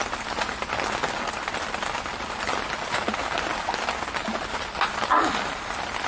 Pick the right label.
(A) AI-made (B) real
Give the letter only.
B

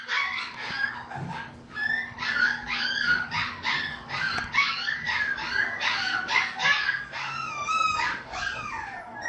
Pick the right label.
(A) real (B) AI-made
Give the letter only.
B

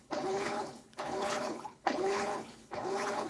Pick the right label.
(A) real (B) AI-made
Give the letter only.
B